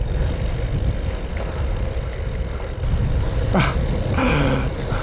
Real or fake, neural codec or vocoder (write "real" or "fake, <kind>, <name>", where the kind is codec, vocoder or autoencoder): real